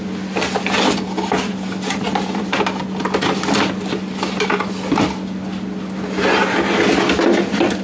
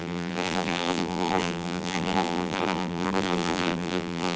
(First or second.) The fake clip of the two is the second